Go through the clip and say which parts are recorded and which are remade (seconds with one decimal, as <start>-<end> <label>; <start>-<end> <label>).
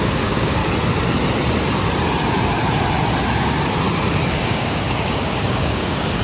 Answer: 0.0-0.6 remade; 0.6-4.3 recorded; 4.3-6.2 remade